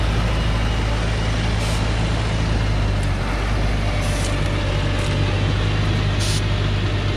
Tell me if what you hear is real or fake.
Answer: real